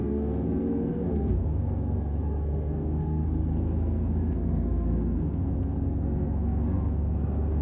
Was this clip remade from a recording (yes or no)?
yes